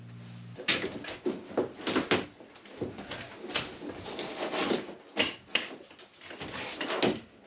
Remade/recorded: recorded